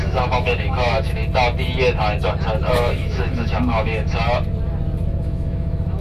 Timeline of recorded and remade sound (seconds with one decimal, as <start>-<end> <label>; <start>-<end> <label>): 0.0-1.2 remade; 1.2-2.7 recorded; 2.7-4.2 remade; 4.2-5.2 recorded; 5.2-6.0 remade